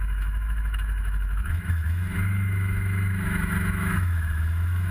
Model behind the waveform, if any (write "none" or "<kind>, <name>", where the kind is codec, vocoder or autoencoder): autoencoder, DAC-VAE